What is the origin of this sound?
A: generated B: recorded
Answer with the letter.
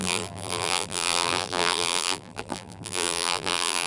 A